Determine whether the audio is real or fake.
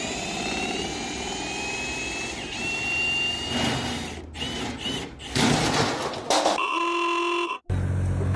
real